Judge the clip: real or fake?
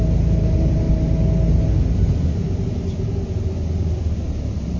real